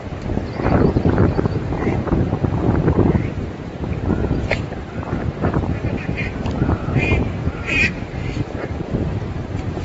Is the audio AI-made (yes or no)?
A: yes